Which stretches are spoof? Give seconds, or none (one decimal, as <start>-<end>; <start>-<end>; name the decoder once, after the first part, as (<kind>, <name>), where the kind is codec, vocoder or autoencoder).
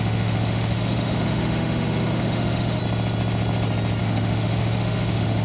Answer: 0.0-2.8 (autoencoder, DAC-VAE); 4.0-5.4